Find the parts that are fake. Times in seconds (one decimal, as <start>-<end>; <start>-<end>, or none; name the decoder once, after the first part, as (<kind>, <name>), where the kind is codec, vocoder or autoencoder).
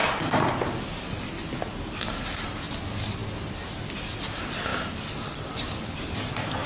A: none